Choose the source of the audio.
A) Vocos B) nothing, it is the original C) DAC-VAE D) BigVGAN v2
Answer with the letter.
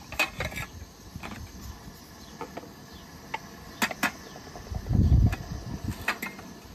B